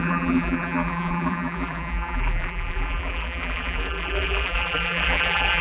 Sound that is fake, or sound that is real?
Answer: fake